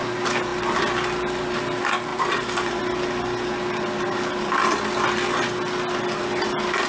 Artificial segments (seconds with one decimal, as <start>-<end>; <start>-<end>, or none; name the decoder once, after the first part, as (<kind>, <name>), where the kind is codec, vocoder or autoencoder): 2.1-2.8 (vocoder, BigVGAN v2)